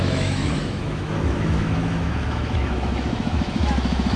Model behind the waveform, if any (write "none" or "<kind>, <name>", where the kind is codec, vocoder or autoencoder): autoencoder, DAC-VAE